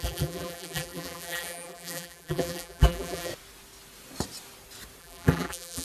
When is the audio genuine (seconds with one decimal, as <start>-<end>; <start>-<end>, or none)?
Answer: 3.3-5.0